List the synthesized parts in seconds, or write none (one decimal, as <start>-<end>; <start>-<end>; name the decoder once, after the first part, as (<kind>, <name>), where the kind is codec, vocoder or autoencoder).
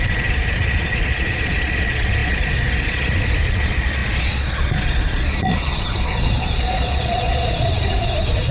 0.0-8.5 (vocoder, Vocos)